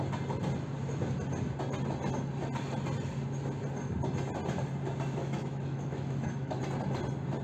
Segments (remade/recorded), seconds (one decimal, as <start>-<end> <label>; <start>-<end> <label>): 0.0-5.2 recorded; 5.2-6.6 remade; 6.6-7.4 recorded